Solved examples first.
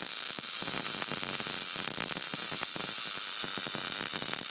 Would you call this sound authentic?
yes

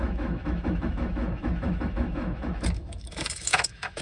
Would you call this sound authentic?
no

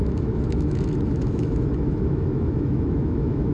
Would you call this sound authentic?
no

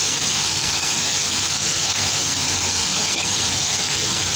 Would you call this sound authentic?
no